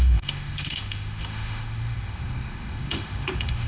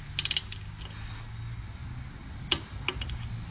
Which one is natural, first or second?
second